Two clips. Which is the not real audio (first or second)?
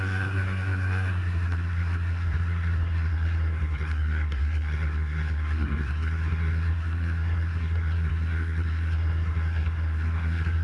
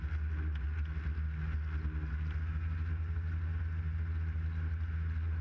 first